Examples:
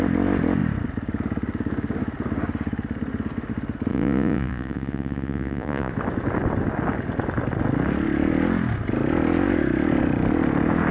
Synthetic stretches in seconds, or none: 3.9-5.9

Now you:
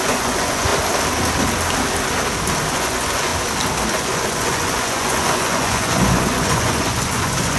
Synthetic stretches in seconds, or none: 0.0-0.7; 2.7-3.3; 3.9-7.6

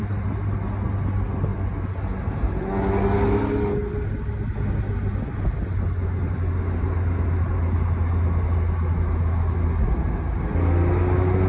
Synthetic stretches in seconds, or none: none

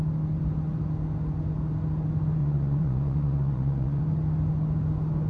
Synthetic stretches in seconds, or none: 2.4-4.0

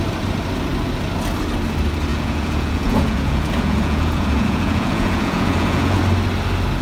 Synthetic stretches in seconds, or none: 2.1-6.0

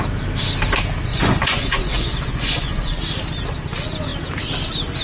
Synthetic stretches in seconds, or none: 1.1-3.0

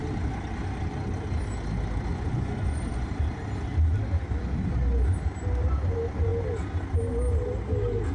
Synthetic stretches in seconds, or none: 2.1-3.1